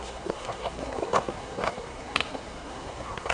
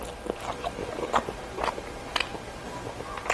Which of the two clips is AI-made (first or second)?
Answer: first